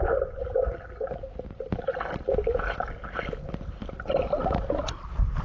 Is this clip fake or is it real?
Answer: real